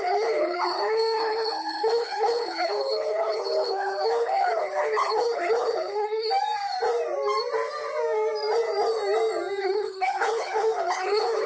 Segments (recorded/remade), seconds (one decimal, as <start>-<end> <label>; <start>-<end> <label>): 0.0-6.3 remade; 6.3-9.6 recorded; 9.6-11.5 remade